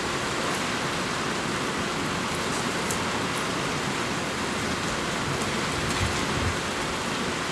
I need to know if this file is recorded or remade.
recorded